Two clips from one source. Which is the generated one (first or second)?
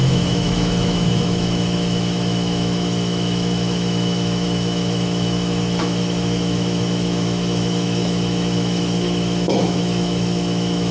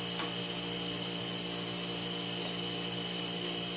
first